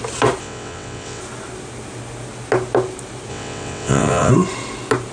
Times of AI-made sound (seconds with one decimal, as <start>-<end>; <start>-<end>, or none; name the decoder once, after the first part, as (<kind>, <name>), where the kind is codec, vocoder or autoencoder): 0.4-1.2 (vocoder, WaveNeXt); 3.3-4.3